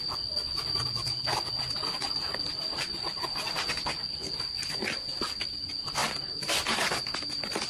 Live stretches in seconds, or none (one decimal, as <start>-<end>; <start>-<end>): 0.0-7.7